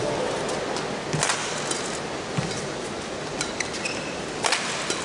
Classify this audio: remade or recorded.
recorded